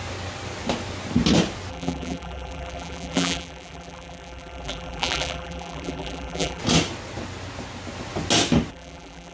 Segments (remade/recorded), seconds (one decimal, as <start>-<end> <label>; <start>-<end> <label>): 0.0-1.7 recorded; 1.7-6.6 remade; 6.6-8.7 recorded; 8.7-9.3 remade